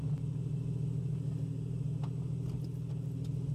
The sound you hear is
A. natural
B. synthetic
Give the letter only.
A